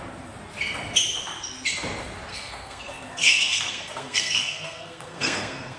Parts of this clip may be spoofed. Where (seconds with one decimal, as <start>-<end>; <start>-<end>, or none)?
2.3-5.8